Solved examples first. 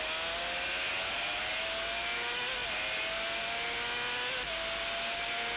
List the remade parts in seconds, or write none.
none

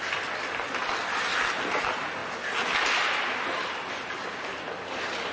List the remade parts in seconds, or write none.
none

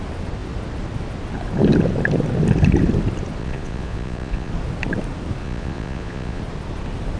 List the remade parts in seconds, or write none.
3.4-4.5 (vocoder, Vocos); 5.4-6.4

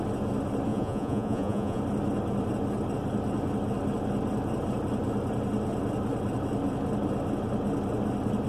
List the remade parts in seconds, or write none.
0.7-1.8 (vocoder, Vocos)